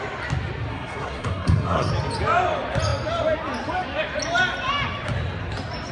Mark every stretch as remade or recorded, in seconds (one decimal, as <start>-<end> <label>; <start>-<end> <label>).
0.0-0.7 recorded; 0.7-1.9 remade; 1.9-5.9 recorded